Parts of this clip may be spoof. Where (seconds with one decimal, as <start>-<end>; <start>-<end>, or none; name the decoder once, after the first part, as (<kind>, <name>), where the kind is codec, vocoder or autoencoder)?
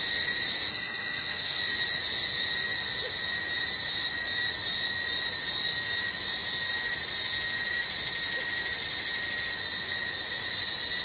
0.7-1.6 (autoencoder, DAC-VAE)